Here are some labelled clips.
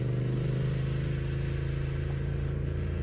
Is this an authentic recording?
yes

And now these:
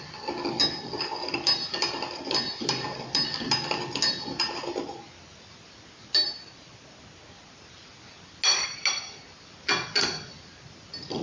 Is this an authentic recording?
yes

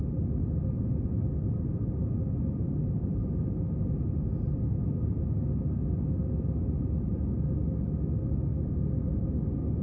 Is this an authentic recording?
yes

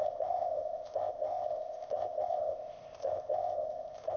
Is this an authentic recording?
no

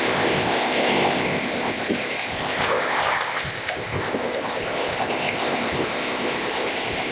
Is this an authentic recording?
no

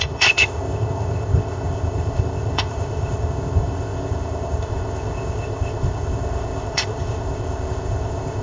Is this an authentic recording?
no